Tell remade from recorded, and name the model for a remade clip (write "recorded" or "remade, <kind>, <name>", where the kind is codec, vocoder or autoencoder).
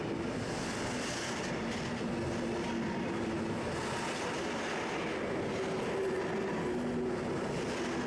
recorded